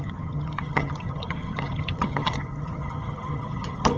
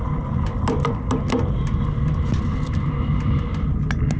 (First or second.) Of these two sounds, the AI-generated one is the first